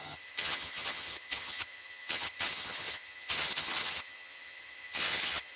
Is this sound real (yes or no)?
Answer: no